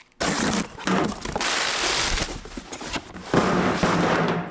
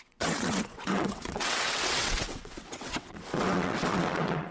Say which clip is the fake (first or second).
second